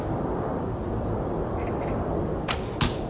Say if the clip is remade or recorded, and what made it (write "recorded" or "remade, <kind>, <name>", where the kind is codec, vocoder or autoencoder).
recorded